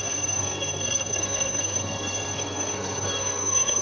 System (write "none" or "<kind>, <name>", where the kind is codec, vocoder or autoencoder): codec, SNAC